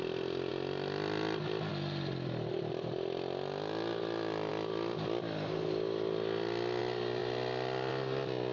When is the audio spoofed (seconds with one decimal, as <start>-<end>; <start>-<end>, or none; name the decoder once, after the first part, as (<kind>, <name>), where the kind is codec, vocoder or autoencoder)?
none